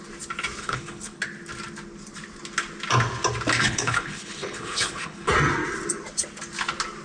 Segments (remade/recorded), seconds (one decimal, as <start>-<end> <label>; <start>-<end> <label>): 0.0-0.6 recorded; 0.6-1.2 remade; 1.2-3.6 recorded; 3.6-5.3 remade; 5.3-7.0 recorded